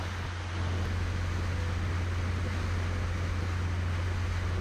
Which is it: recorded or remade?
recorded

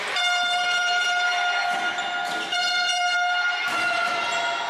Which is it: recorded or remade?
recorded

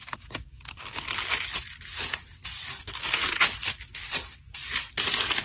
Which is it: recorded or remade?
recorded